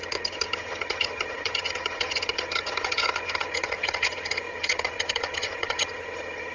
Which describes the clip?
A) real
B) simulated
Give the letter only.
B